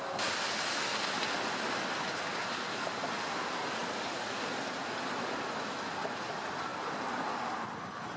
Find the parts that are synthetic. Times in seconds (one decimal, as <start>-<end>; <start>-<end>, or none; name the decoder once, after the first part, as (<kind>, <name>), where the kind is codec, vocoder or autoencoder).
none